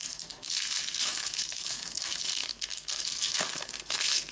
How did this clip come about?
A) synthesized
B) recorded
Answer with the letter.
A